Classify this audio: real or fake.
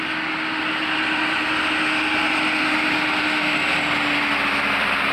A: real